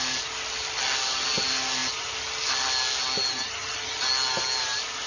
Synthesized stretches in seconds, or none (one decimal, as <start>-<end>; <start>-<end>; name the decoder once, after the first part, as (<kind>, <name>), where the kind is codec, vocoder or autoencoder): none